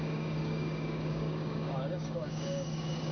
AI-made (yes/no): yes